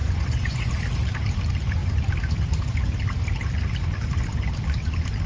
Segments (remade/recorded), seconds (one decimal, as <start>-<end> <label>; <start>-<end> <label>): 0.0-0.7 remade; 0.7-5.3 recorded